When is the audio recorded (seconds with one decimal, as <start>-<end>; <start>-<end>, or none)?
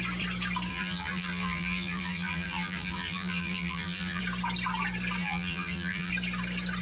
0.0-0.7; 4.2-5.2; 6.1-6.8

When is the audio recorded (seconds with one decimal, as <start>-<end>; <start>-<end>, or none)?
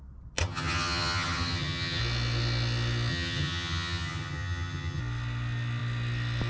0.0-0.4; 2.0-3.1; 5.0-6.5